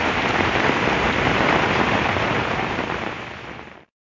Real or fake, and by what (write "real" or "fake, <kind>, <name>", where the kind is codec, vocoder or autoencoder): fake, vocoder, BigVGAN v2